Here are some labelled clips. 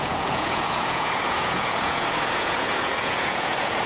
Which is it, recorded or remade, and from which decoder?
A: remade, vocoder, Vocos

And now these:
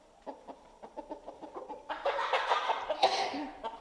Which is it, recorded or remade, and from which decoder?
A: recorded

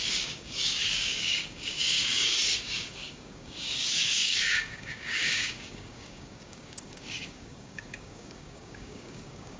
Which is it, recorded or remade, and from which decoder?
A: remade, codec, DAC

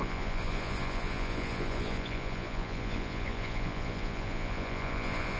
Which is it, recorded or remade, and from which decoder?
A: remade, vocoder, Vocos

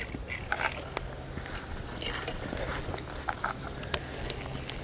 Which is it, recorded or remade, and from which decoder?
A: recorded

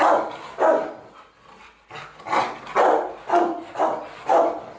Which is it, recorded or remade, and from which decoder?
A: recorded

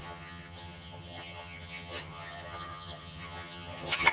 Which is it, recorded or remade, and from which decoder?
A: remade, vocoder, HiFi-GAN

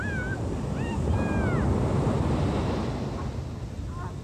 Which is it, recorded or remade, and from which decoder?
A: recorded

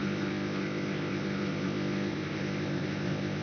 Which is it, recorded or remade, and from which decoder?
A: remade, codec, ZipCodec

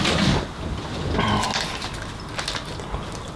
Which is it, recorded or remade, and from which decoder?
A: recorded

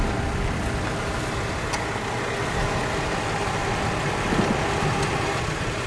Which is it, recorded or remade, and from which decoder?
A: recorded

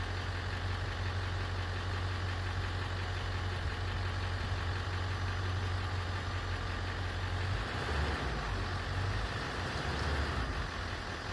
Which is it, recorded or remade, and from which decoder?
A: recorded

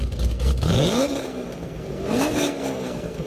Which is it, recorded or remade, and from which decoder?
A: remade, codec, SNAC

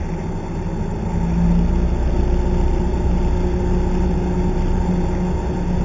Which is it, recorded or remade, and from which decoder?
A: recorded